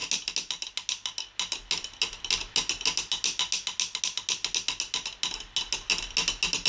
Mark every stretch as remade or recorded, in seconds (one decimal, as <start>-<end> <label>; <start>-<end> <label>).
0.0-6.7 recorded